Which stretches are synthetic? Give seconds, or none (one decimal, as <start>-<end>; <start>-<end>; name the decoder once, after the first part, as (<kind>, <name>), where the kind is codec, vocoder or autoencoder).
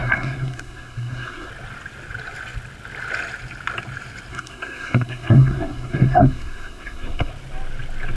0.0-1.5 (codec, SNAC); 4.3-7.3